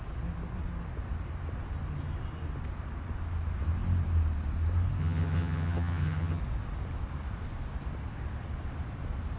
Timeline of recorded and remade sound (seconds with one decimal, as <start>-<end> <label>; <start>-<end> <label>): 0.0-5.0 recorded; 5.0-6.4 remade; 6.4-9.4 recorded